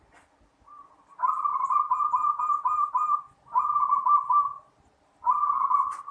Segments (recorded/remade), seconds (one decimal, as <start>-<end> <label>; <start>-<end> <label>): 0.0-6.1 recorded